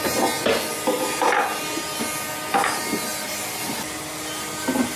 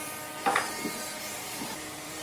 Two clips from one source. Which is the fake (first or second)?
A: second